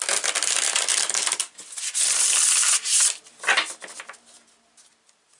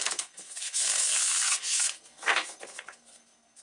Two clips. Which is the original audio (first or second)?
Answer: first